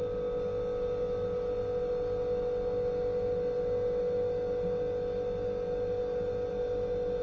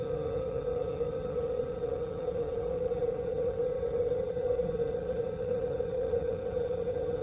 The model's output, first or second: second